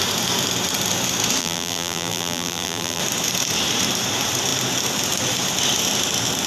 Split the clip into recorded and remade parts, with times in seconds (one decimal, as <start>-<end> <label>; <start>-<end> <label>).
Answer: 0.0-1.4 recorded; 1.4-3.0 remade; 3.0-6.5 recorded